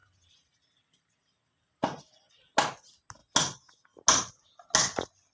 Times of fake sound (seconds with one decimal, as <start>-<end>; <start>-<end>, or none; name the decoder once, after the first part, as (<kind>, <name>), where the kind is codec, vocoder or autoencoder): none